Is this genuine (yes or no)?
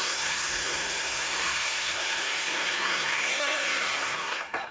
no